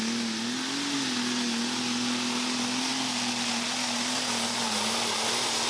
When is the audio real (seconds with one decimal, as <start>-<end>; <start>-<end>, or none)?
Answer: 0.0-5.7